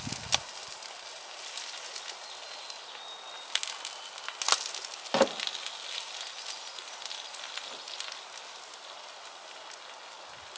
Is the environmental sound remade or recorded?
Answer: recorded